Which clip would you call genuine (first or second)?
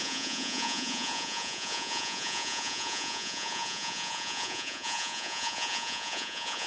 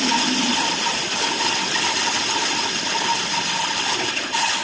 second